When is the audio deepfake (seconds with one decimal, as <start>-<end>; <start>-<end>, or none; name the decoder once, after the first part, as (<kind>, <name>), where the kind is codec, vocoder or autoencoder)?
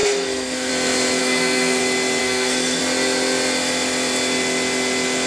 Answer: 0.0-0.7 (codec, SNAC); 1.2-1.8; 2.2-2.8